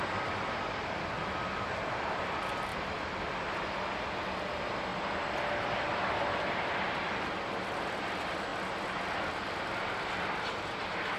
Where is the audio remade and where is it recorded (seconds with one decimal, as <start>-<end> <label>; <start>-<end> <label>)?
0.0-2.7 recorded; 2.7-3.2 remade; 3.2-4.9 recorded; 4.9-7.9 remade; 7.9-11.2 recorded